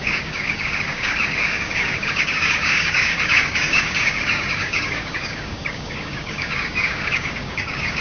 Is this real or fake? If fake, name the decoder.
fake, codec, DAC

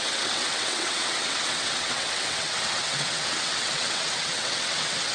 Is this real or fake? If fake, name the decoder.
fake, vocoder, WaveNeXt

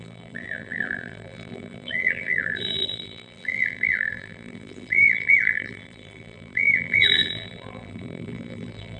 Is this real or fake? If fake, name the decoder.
fake, vocoder, BigVGAN v2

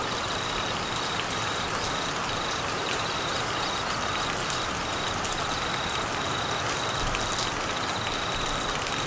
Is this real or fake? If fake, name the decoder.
real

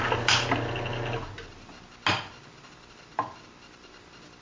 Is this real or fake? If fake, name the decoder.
real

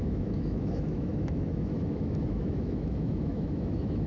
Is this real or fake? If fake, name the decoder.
fake, autoencoder, DAC-VAE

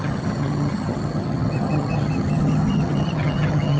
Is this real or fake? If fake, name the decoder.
fake, vocoder, HiFi-GAN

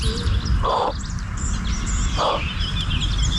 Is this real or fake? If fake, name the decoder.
real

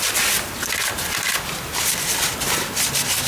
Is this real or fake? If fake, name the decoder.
real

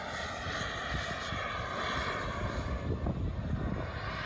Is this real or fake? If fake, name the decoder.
real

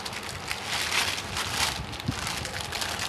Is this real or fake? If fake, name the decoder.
real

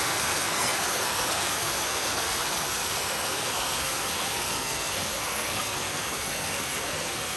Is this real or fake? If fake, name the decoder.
fake, codec, SNAC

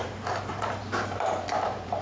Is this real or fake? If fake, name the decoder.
fake, vocoder, BigVGAN v2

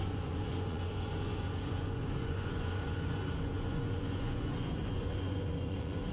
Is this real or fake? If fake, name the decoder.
fake, vocoder, Vocos